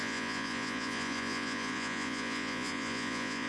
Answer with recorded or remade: remade